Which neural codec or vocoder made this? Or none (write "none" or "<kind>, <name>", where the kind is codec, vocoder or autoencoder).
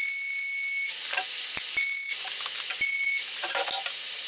none